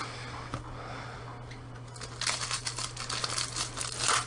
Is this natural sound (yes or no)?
yes